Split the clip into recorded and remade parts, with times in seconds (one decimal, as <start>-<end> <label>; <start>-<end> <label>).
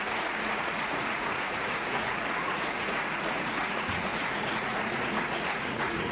0.0-6.1 remade